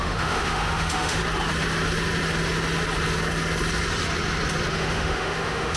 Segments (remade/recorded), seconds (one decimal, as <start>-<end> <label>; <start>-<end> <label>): 0.0-1.2 remade; 1.2-4.7 recorded; 4.7-5.8 remade